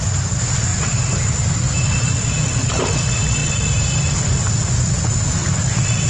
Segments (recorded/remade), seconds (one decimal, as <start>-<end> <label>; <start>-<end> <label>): 0.0-0.7 recorded; 0.7-1.2 remade; 1.2-3.4 recorded; 3.4-4.5 remade; 4.5-5.4 recorded; 5.4-6.1 remade